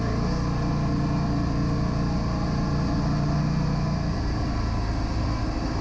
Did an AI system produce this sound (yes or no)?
no